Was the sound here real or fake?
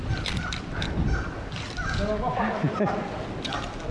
real